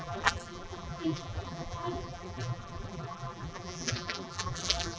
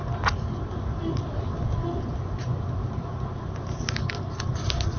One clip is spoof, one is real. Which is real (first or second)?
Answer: second